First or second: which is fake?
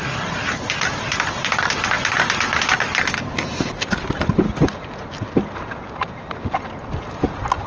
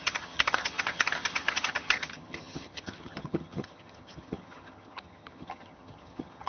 second